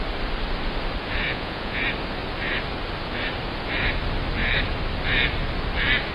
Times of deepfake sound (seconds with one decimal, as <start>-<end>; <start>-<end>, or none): 1.3-1.8